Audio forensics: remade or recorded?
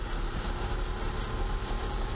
recorded